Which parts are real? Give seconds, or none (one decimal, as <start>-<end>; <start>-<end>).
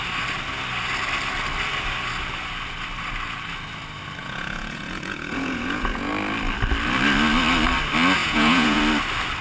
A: 0.0-4.2; 6.1-8.2; 8.8-9.4